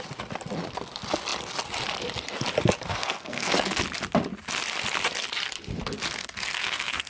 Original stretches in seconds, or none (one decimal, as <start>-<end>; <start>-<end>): 0.0-2.9; 3.8-6.2